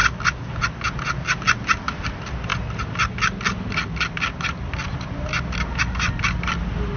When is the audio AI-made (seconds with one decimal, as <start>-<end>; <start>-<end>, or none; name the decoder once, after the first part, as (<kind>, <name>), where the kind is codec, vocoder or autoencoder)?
0.0-1.4 (vocoder, BigVGAN v2)

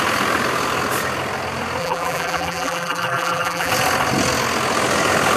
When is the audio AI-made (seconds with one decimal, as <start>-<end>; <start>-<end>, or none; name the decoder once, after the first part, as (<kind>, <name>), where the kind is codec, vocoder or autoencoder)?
1.8-3.7 (vocoder, BigVGAN v2)

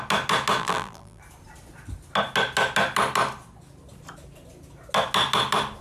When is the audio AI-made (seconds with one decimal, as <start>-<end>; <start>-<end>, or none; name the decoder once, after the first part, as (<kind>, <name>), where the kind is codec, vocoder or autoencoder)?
0.6-1.2 (vocoder, BigVGAN v2)

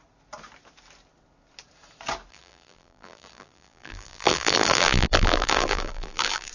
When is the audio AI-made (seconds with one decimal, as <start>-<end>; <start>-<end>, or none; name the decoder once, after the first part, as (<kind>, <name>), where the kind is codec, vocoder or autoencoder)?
2.3-6.5 (vocoder, BigVGAN v2)

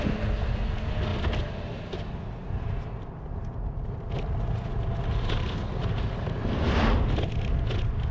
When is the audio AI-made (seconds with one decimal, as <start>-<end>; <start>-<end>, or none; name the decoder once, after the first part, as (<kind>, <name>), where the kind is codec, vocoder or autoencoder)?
none

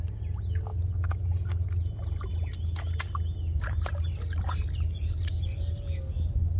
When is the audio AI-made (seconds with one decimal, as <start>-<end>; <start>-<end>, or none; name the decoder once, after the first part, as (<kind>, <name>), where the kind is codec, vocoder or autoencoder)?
none

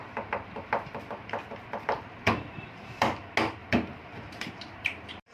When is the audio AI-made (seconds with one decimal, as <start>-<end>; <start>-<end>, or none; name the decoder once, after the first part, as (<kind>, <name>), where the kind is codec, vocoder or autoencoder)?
0.0-3.2 (vocoder, BigVGAN v2); 3.6-5.3